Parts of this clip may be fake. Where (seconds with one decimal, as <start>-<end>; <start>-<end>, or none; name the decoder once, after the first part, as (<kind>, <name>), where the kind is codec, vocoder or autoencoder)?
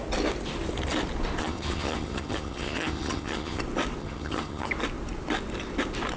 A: 1.4-3.6 (vocoder, HiFi-GAN); 4.0-4.7